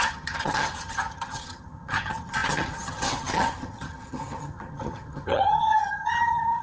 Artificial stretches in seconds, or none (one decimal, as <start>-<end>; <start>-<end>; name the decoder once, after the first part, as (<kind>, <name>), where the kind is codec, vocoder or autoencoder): 0.0-6.6 (vocoder, HiFi-GAN)

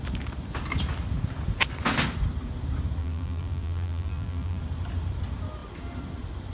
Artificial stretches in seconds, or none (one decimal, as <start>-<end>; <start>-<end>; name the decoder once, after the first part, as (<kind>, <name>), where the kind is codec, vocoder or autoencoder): 3.0-4.6 (vocoder, BigVGAN v2)

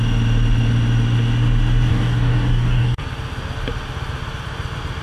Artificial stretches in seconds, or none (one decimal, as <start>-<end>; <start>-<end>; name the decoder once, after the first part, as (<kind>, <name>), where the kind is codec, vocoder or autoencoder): 1.9-3.0 (codec, DAC)

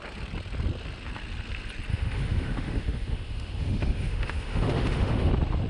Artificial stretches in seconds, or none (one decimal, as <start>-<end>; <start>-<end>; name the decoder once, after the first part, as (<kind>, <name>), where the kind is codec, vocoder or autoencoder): 1.9-5.3 (autoencoder, DAC-VAE)

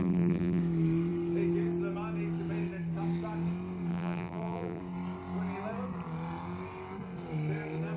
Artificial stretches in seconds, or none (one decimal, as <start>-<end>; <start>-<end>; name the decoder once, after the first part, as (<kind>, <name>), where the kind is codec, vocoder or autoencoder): 0.0-0.6 (vocoder, BigVGAN v2); 3.9-4.8